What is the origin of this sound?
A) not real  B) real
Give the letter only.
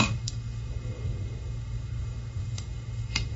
A